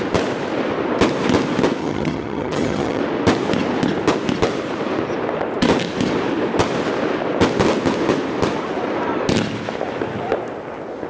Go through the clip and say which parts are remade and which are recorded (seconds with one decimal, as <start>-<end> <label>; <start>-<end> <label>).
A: 0.0-1.8 recorded; 1.8-3.0 remade; 3.0-11.1 recorded